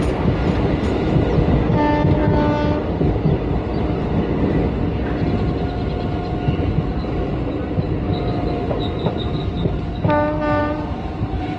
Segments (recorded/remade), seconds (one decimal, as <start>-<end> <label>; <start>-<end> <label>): 0.0-10.6 recorded; 10.6-11.6 remade